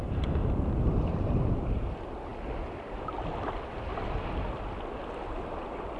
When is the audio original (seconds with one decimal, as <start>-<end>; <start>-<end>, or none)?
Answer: 0.0-6.0